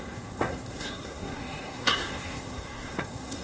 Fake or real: fake